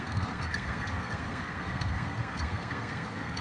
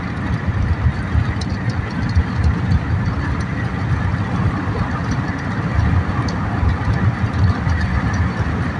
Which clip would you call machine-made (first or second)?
first